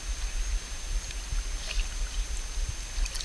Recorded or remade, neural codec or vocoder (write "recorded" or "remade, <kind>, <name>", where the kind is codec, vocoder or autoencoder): recorded